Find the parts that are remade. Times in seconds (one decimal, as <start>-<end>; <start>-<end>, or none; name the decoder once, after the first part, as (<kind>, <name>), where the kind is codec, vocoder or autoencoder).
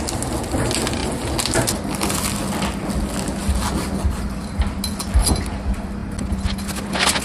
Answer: none